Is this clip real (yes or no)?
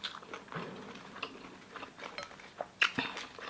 yes